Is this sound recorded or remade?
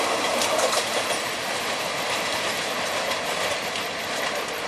recorded